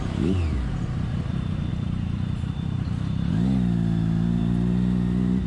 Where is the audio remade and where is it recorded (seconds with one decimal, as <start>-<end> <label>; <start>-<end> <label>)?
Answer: 0.0-1.7 recorded; 1.7-4.4 remade; 4.4-5.5 recorded